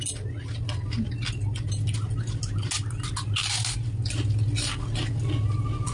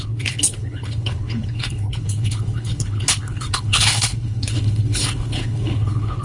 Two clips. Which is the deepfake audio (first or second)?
second